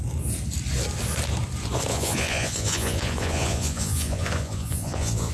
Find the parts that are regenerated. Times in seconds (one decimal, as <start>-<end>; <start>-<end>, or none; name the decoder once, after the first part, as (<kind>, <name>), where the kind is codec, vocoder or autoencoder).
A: 1.9-5.3 (vocoder, Vocos)